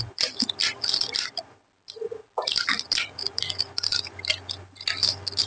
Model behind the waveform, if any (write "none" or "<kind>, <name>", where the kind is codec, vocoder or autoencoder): none